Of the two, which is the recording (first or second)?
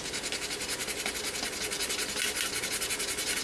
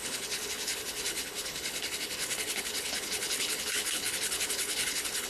first